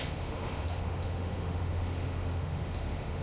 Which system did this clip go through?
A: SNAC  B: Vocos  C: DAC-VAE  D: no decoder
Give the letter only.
C